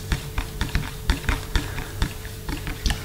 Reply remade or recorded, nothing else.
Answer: remade